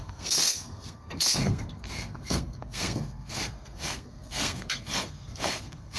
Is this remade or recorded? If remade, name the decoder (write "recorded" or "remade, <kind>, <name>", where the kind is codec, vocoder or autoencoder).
remade, codec, SNAC